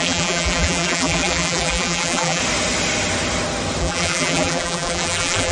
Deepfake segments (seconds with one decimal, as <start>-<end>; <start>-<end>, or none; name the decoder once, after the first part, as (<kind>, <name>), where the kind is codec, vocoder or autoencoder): 0.0-2.4 (vocoder, BigVGAN v2); 3.8-5.5